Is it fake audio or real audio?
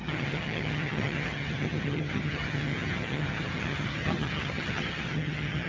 fake